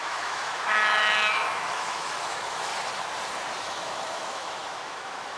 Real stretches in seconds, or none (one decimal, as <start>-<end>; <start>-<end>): 2.7-3.6